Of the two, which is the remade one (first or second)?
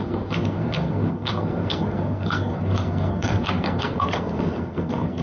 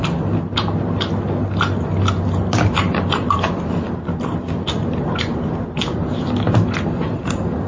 first